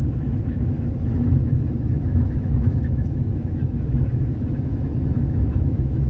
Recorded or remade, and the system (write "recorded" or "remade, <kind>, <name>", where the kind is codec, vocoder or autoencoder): remade, autoencoder, DAC-VAE